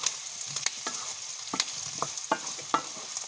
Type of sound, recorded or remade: recorded